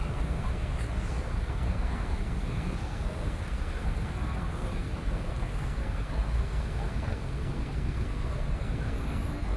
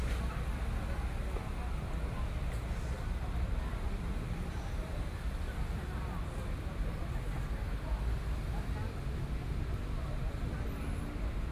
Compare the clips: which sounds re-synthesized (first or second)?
first